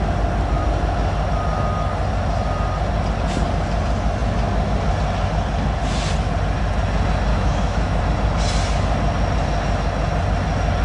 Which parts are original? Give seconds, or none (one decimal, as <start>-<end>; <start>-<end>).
0.0-7.3; 8.0-10.8